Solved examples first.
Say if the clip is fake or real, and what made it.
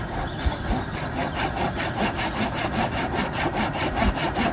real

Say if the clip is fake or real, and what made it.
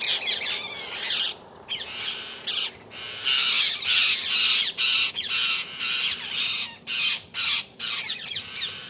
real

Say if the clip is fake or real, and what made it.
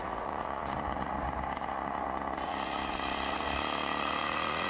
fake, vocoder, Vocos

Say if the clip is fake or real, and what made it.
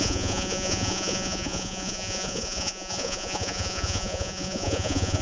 fake, vocoder, Vocos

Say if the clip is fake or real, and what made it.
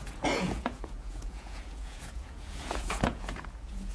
fake, vocoder, Vocos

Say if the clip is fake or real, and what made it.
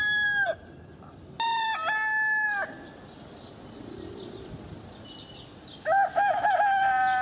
real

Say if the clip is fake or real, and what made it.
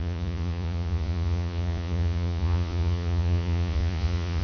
fake, vocoder, Vocos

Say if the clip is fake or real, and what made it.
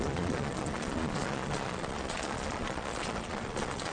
fake, vocoder, Vocos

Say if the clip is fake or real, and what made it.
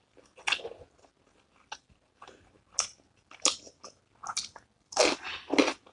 real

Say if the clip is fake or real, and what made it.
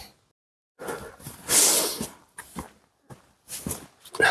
real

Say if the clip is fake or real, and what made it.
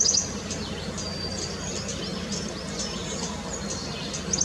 real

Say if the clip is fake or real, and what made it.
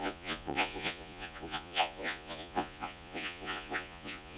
fake, vocoder, Vocos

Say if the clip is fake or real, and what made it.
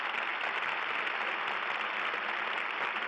real